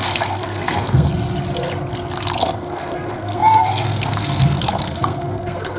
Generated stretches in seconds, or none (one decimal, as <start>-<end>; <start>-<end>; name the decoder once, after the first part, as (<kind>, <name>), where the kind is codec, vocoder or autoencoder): 0.0-1.1 (codec, SNAC); 2.4-5.8

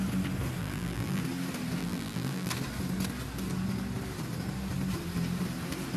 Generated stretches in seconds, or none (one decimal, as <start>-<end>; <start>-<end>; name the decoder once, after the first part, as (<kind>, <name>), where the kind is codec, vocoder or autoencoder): 0.6-1.2 (vocoder, BigVGAN v2); 1.8-2.5

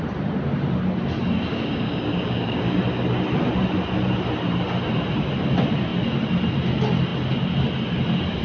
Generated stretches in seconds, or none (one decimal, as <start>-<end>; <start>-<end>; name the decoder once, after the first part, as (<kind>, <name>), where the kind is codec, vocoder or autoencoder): 1.5-2.8 (codec, DAC)

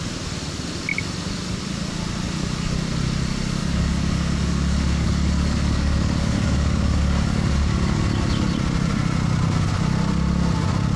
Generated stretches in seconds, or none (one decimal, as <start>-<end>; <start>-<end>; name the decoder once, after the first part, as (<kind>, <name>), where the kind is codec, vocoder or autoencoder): 3.6-8.0 (codec, DAC)

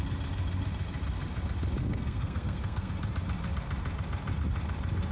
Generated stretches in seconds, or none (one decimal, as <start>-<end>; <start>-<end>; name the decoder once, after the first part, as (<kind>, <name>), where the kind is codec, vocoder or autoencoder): 1.8-2.9 (codec, SNAC)

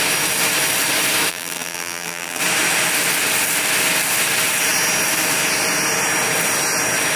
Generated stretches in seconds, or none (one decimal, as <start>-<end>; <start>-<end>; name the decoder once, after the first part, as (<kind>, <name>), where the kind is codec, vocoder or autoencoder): 1.3-2.4 (vocoder, BigVGAN v2)